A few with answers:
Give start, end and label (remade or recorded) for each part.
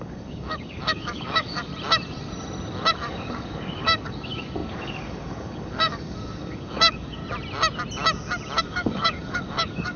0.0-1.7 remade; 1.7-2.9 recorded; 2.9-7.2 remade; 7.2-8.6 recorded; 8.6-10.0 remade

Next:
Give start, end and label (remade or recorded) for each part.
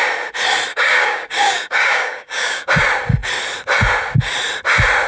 0.0-0.7 recorded; 0.7-2.7 remade; 2.7-5.1 recorded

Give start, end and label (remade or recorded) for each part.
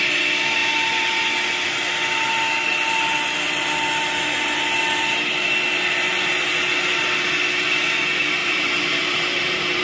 0.0-8.4 recorded; 8.4-9.8 remade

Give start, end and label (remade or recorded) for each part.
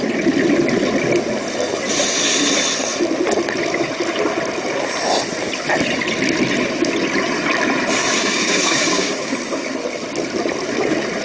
0.0-8.0 recorded; 8.0-9.3 remade; 9.3-11.2 recorded